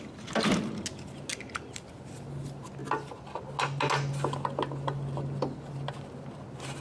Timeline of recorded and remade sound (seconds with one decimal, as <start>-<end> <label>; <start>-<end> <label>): 0.0-1.3 recorded; 1.3-1.9 remade; 1.9-6.8 recorded